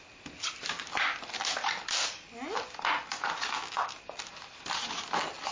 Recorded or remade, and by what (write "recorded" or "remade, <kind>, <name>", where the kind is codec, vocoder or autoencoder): recorded